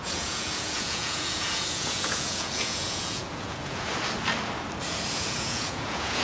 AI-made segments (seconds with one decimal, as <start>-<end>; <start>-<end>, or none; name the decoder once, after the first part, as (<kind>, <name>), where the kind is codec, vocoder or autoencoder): 0.0-3.9 (vocoder, Vocos); 5.1-6.2